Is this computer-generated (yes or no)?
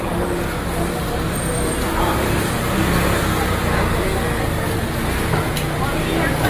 no